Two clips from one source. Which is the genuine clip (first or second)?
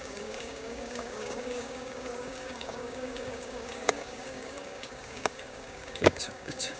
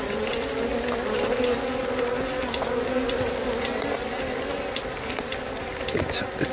second